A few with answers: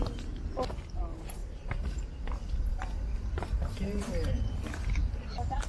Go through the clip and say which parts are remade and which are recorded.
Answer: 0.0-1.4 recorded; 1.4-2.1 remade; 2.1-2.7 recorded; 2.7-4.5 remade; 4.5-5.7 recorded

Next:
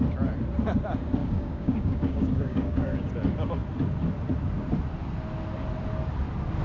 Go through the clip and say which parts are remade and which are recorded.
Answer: 0.0-1.2 recorded; 1.2-3.1 remade; 3.1-6.6 recorded

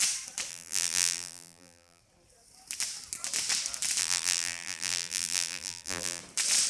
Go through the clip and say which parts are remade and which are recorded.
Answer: 0.0-0.5 recorded; 0.5-2.0 remade; 2.0-4.0 recorded; 4.0-6.2 remade; 6.2-6.7 recorded

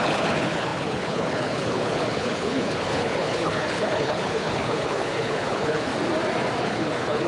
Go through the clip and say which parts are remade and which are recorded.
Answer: 0.0-5.9 remade; 5.9-6.6 recorded; 6.6-7.3 remade